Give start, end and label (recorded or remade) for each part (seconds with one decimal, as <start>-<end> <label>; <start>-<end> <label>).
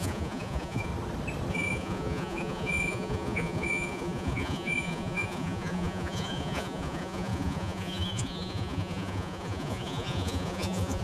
0.0-0.9 remade; 0.9-1.5 recorded; 1.5-11.0 remade